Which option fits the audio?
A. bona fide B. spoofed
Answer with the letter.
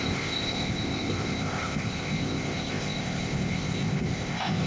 B